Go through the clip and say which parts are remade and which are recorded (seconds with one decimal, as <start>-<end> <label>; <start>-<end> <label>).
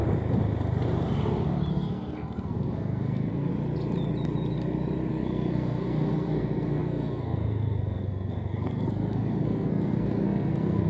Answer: 0.0-1.7 recorded; 1.7-3.5 remade; 3.5-5.1 recorded; 5.1-10.9 remade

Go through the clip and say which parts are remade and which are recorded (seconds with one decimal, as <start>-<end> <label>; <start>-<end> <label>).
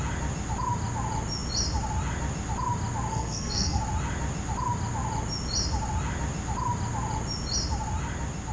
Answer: 0.0-3.1 recorded; 3.1-3.8 remade; 3.8-8.5 recorded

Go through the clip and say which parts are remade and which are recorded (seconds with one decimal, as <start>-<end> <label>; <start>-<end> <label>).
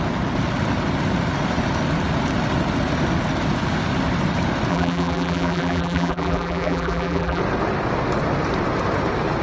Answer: 0.0-4.7 recorded; 4.7-7.4 remade; 7.4-9.4 recorded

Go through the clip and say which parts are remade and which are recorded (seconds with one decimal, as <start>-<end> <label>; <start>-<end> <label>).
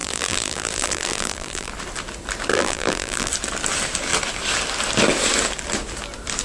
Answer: 0.0-1.7 remade; 1.7-2.5 recorded; 2.5-3.3 remade; 3.3-6.4 recorded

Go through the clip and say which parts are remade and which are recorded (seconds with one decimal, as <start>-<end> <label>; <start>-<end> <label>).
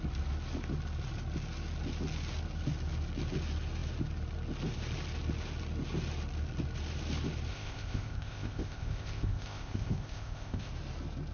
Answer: 0.0-7.5 recorded; 7.5-10.7 remade; 10.7-11.3 recorded